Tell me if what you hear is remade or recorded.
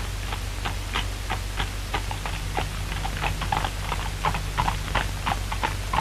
recorded